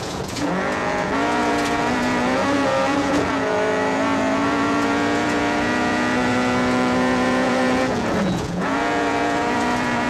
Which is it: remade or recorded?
remade